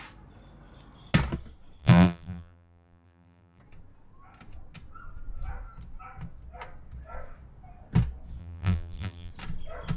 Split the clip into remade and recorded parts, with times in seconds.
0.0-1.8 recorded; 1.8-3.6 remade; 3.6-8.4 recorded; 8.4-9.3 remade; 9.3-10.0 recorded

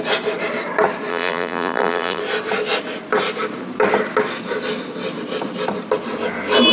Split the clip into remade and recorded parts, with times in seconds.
0.0-1.1 recorded; 1.1-2.2 remade; 2.2-6.7 recorded